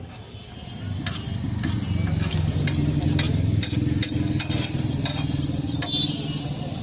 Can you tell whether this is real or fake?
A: real